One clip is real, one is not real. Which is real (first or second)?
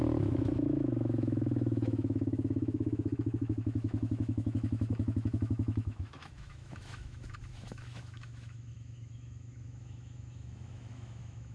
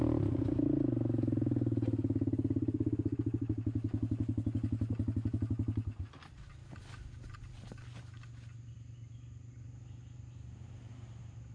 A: second